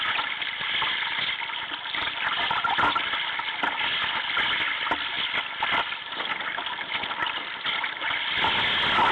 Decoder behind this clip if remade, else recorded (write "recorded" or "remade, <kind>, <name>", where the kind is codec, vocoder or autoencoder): recorded